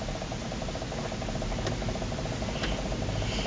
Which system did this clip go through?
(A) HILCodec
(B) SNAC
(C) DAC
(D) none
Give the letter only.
D